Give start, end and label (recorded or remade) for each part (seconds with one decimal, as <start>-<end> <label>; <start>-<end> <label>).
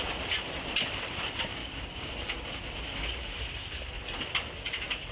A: 0.0-1.6 recorded; 1.6-2.1 remade; 2.1-5.1 recorded